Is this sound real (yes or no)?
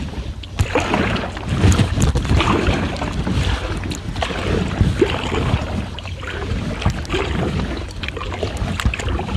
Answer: yes